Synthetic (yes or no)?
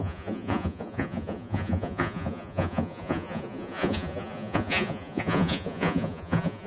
yes